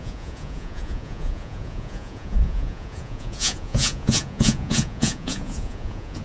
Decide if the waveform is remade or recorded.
remade